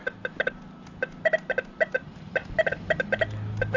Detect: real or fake real